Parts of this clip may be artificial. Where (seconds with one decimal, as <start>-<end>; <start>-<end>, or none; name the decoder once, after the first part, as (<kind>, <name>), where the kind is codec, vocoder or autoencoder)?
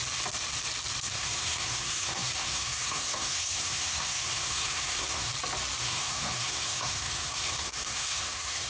1.1-5.3 (codec, SNAC); 5.8-8.7